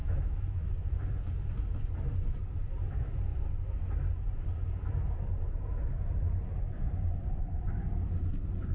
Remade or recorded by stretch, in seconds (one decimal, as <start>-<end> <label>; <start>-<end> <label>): 0.0-0.6 remade; 0.6-8.7 recorded